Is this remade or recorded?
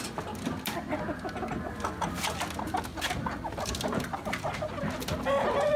recorded